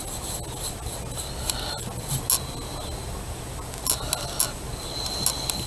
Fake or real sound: real